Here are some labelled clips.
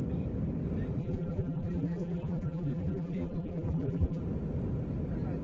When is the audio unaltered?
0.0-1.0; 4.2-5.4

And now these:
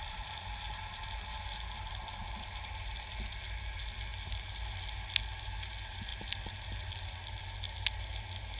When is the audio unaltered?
0.0-8.6

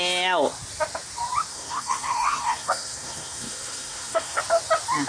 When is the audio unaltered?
0.0-1.5; 4.4-5.1

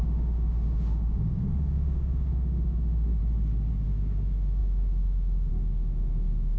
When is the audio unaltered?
3.2-3.7

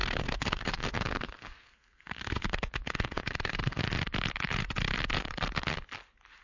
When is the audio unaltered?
3.8-6.4